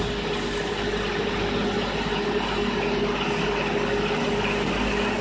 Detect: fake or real real